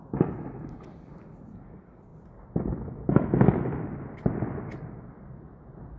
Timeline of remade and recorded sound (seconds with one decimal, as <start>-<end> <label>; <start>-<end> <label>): 0.0-6.0 recorded